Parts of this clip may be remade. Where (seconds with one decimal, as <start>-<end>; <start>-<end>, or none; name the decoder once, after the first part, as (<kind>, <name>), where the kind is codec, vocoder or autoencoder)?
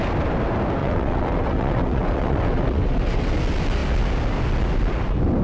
0.8-3.3 (vocoder, WaveNeXt)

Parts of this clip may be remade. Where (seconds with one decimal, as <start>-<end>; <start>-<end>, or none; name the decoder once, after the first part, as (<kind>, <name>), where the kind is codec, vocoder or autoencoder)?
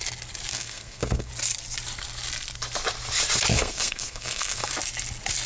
0.5-1.3 (codec, SNAC); 3.5-4.7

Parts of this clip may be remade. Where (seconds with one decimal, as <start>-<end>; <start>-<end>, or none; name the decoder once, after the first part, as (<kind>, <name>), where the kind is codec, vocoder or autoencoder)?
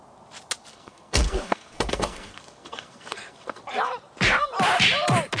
0.7-3.6 (codec, SNAC)